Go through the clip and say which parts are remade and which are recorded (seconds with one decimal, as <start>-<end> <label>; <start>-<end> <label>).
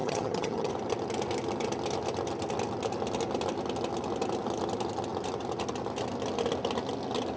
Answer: 0.0-0.7 remade; 0.7-7.4 recorded